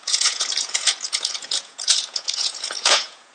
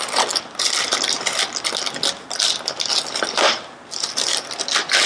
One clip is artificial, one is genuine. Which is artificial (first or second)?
first